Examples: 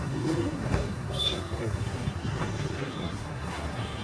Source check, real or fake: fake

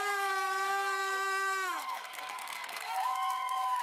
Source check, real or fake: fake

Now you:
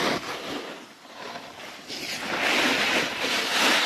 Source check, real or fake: real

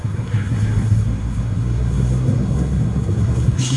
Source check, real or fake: fake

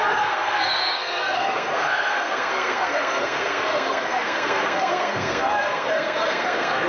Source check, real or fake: fake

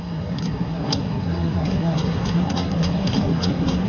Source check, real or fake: fake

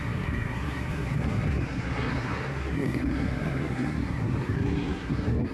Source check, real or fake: fake